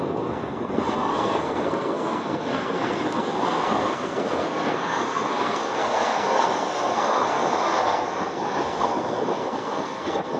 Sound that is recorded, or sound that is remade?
remade